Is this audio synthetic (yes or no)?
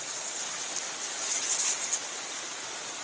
no